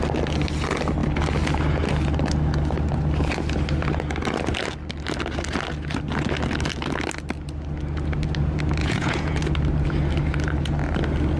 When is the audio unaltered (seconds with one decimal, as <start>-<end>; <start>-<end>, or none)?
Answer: 0.0-8.8; 9.4-11.4